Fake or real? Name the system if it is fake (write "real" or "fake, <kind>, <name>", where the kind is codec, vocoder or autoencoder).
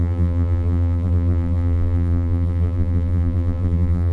fake, vocoder, BigVGAN v2